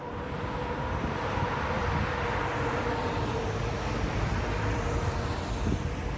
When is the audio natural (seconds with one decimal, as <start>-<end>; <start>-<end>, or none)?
0.0-6.2